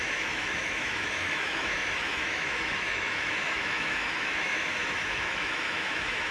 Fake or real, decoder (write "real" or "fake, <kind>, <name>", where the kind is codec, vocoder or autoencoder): fake, autoencoder, DAC-VAE